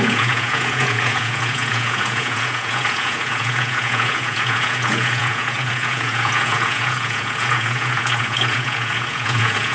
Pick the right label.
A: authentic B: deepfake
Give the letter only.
B